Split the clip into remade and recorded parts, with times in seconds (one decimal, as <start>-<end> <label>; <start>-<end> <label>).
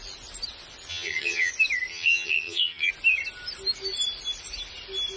0.0-0.9 recorded; 0.9-1.5 remade; 1.5-1.9 recorded; 1.9-2.9 remade; 2.9-5.2 recorded